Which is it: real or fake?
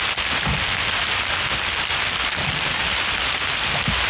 real